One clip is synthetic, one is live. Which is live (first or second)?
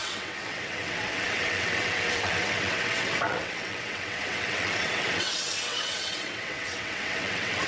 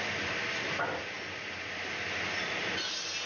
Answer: second